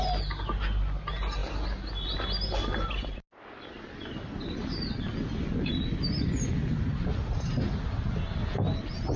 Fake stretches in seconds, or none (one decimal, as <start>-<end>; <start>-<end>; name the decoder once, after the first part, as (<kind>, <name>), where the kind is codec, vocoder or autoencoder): none